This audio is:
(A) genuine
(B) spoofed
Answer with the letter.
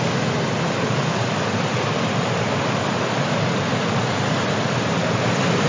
A